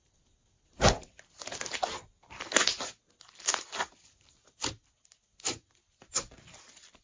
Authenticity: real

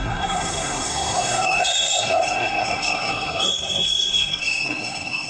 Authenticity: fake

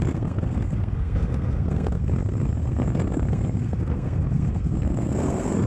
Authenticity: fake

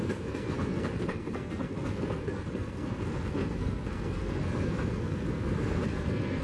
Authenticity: fake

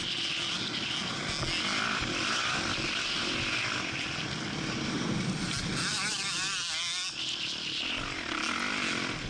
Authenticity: real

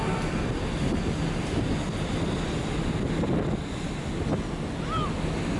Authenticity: real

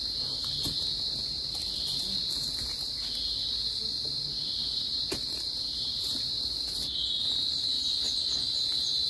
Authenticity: real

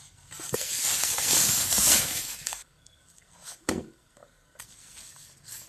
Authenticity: fake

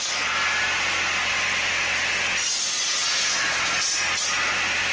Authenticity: real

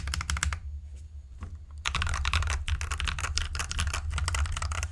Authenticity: real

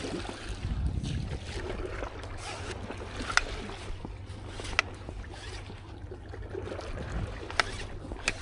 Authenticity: real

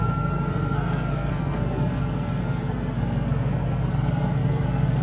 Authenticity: fake